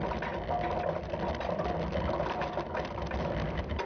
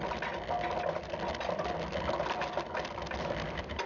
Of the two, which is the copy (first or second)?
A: first